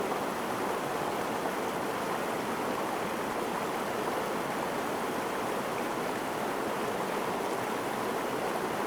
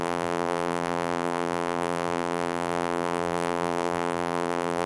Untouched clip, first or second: first